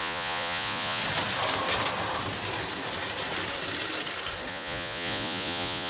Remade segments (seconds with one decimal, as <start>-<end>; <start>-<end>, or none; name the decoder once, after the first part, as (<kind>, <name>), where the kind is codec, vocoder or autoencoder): 0.0-1.0 (vocoder, Vocos); 4.5-5.9